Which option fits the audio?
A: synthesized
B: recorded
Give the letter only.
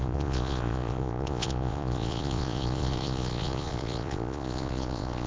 A